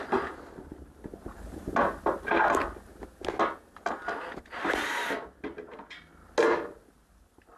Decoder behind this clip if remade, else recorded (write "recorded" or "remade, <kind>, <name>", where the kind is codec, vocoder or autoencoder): recorded